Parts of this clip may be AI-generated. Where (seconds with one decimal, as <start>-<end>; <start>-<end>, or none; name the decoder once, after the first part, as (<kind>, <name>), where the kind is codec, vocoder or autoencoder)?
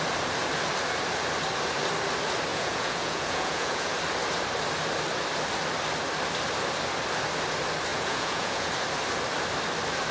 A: 2.5-3.9 (vocoder, Vocos); 7.9-8.7